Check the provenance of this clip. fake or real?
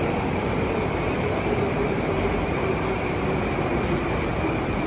fake